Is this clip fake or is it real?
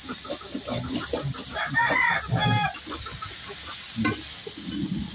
real